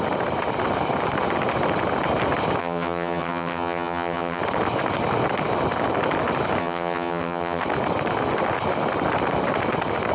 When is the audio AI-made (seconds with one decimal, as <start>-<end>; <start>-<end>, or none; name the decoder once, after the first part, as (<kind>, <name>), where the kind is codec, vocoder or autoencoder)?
2.6-4.4 (vocoder, HiFi-GAN); 6.6-7.6